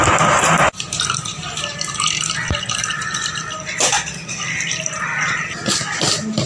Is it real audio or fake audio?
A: real